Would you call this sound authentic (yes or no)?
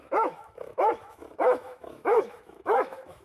no